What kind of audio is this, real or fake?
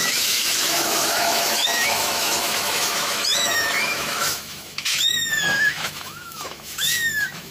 fake